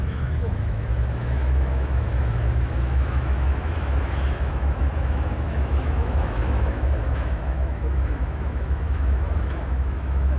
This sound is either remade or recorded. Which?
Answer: remade